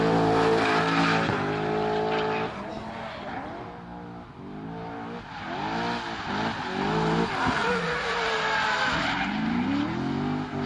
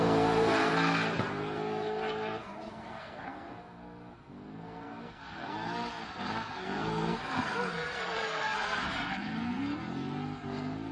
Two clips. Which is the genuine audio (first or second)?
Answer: first